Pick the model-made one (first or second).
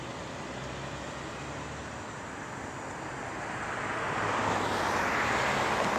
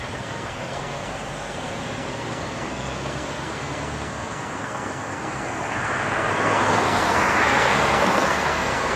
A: second